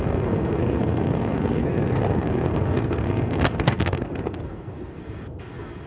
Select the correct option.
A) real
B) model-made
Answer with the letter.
B